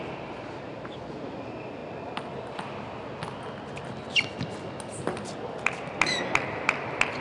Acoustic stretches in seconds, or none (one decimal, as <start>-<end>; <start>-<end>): 0.0-7.2